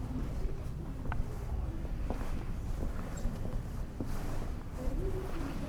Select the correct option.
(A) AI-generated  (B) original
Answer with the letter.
A